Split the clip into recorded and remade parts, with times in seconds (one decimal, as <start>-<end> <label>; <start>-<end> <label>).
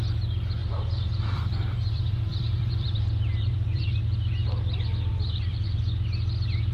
0.0-0.6 recorded; 0.6-4.0 remade; 4.0-5.1 recorded; 5.1-5.8 remade; 5.8-6.7 recorded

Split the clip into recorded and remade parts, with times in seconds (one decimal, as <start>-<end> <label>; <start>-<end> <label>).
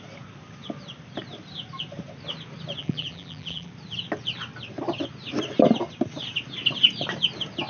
0.0-2.8 recorded; 2.8-3.7 remade; 3.7-7.7 recorded